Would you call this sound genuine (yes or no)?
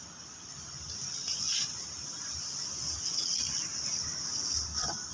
yes